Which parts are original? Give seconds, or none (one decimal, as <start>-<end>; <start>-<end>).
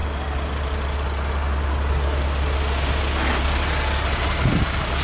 0.0-5.0